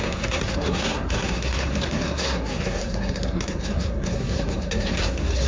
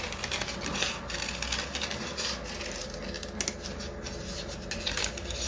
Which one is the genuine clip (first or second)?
second